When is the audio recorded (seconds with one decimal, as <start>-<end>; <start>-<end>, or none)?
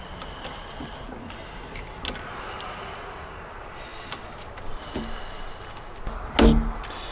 0.0-7.1